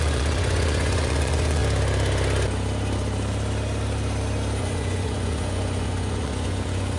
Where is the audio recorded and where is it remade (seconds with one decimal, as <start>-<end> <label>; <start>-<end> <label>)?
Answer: 0.0-1.6 remade; 1.6-4.6 recorded; 4.6-7.0 remade